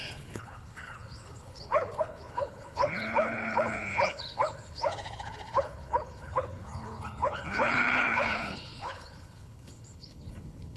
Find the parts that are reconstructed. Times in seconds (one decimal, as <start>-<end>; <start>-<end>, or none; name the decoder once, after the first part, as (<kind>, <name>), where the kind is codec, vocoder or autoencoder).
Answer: 0.0-10.8 (codec, HILCodec)